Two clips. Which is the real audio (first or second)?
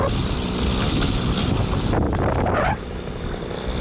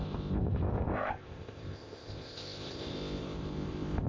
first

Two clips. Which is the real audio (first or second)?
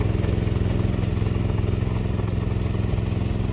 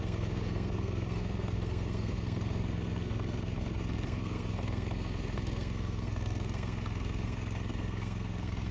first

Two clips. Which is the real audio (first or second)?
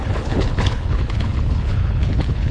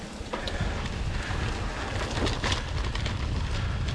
second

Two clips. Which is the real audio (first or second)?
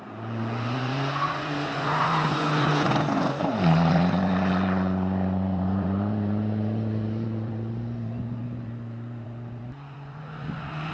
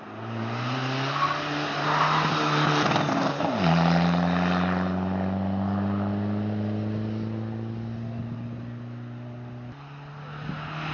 second